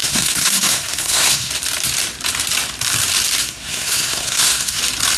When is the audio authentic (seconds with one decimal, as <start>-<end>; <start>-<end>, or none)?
1.5-3.4; 4.8-5.2